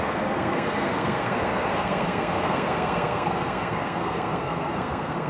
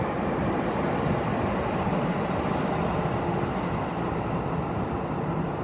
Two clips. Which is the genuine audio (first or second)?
second